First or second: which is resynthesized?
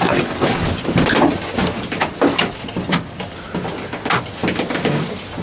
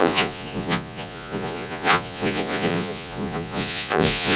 second